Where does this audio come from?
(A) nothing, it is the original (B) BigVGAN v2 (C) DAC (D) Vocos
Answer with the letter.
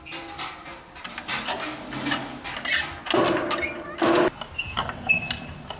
A